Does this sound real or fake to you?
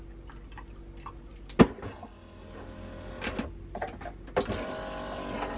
real